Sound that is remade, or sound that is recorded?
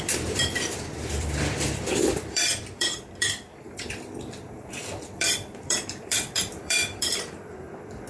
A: remade